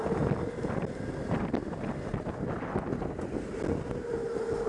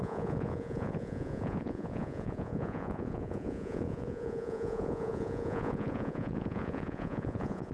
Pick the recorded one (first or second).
first